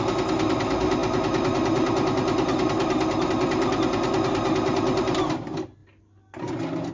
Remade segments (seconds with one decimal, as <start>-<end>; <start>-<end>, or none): none